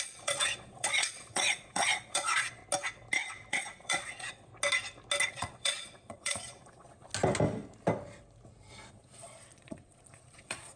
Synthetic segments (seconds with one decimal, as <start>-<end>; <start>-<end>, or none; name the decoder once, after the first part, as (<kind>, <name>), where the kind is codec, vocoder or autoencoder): 0.0-2.6 (vocoder, Vocos); 3.5-4.5; 5.3-7.1; 8.9-10.8